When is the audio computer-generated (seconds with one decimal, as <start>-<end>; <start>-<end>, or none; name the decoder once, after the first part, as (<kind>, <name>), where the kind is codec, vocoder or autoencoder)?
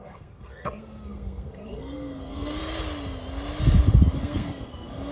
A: 0.0-2.6 (codec, SNAC); 4.2-5.1